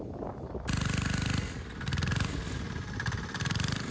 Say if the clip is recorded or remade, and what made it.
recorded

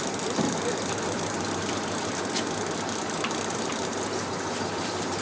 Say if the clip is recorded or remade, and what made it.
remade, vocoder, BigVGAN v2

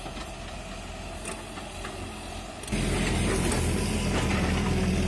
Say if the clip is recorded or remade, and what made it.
recorded